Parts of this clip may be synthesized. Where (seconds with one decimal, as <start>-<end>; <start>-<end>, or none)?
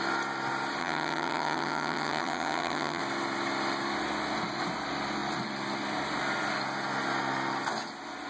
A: 0.8-3.0